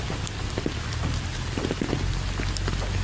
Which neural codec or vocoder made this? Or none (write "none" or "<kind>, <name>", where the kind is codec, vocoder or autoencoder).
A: none